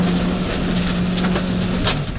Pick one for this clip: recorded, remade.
recorded